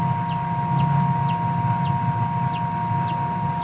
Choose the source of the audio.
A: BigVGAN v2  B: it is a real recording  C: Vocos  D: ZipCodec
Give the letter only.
B